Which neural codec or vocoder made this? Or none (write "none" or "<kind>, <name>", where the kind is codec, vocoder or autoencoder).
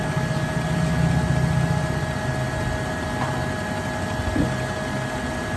none